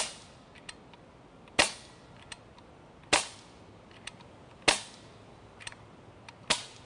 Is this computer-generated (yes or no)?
no